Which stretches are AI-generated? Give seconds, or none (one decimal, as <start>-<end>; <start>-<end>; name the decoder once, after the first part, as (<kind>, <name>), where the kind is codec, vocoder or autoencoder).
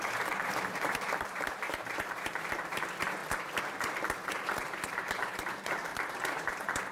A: 0.0-3.2 (vocoder, BigVGAN v2); 4.3-6.9